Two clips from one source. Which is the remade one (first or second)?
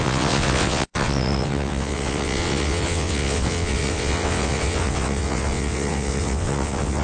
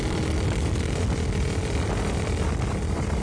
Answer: first